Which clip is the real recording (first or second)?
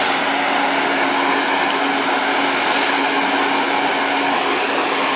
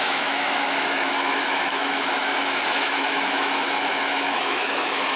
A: first